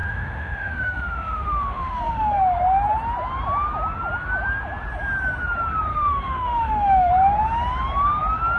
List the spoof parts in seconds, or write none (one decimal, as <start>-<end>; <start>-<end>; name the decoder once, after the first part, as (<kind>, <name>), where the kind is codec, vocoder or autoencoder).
0.0-2.4 (autoencoder, DAC-VAE); 5.9-7.1